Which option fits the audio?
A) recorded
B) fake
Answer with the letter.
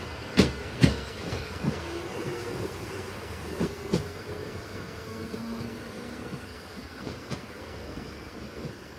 B